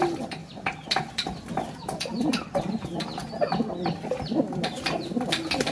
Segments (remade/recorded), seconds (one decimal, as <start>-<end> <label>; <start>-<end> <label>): 0.0-5.7 recorded